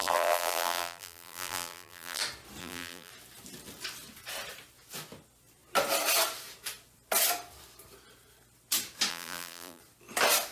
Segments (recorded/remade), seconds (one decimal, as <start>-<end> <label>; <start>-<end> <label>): 0.0-2.2 remade; 2.2-2.6 recorded; 2.6-3.1 remade; 3.1-9.1 recorded; 9.1-9.8 remade; 9.8-10.5 recorded